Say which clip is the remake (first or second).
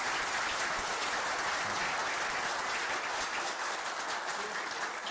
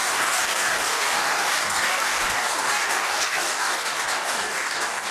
second